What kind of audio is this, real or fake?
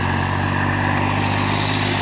real